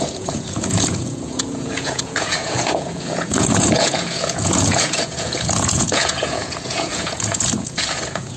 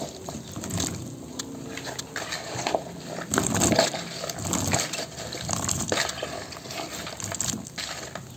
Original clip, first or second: second